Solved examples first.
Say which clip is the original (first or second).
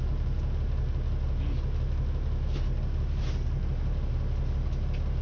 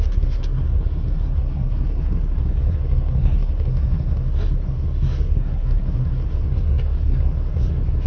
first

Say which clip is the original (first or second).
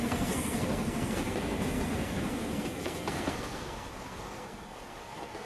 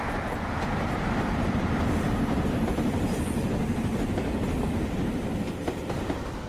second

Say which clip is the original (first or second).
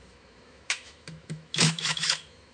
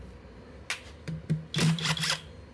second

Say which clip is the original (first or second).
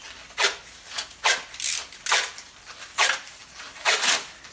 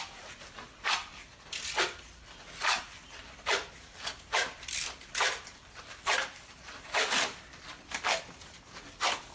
first